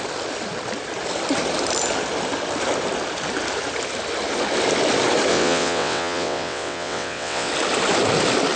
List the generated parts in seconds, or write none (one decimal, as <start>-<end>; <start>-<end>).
5.3-7.5